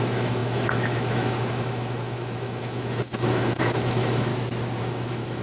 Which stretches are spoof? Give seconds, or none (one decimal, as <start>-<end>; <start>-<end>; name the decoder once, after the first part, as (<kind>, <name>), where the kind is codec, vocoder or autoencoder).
0.0-4.3 (autoencoder, DAC-VAE); 4.8-5.4